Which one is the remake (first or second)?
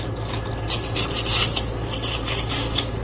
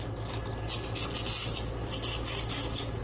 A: first